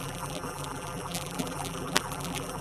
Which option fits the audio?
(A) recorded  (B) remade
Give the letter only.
B